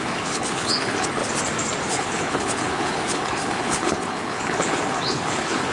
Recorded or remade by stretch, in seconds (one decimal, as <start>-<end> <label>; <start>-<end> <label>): 0.0-1.2 remade; 1.2-1.9 recorded; 1.9-5.7 remade